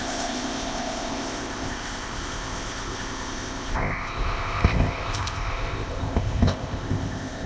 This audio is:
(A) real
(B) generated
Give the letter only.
B